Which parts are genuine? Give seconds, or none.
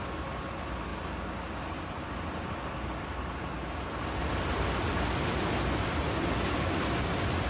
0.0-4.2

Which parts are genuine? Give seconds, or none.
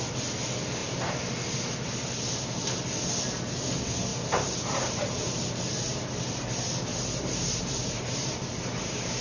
0.0-4.1; 5.4-6.9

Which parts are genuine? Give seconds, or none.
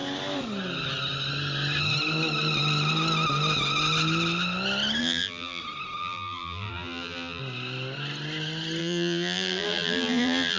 0.0-5.0; 5.6-6.0; 7.4-8.8